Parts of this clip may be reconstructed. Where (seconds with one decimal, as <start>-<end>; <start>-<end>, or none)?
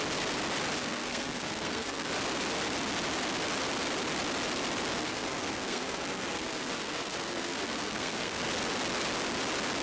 0.8-2.1; 5.0-8.4